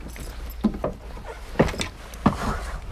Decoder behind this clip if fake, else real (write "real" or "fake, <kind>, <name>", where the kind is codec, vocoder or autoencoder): real